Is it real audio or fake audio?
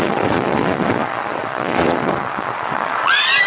fake